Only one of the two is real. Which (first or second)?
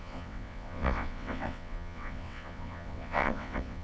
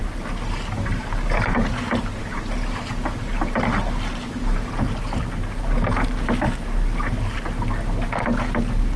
second